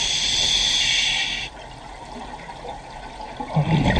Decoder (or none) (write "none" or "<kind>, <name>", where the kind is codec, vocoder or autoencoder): none